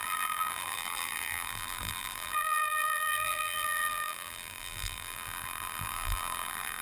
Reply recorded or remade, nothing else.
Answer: remade